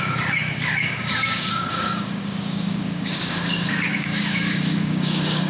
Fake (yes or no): yes